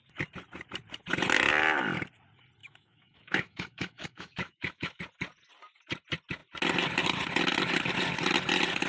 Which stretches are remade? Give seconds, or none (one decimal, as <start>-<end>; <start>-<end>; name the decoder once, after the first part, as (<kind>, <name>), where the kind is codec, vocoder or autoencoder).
2.6-5.0 (autoencoder, DAC-VAE)